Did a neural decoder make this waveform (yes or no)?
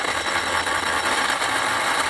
no